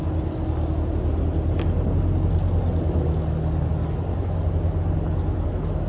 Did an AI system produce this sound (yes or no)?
no